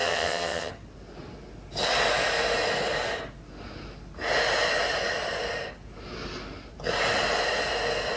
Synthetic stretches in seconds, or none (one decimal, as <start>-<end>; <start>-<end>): 0.0-0.7